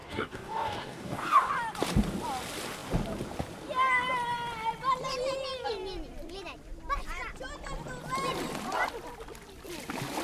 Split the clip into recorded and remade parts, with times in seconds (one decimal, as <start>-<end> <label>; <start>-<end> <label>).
0.0-1.5 remade; 1.5-10.2 recorded